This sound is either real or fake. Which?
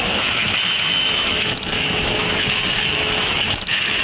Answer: fake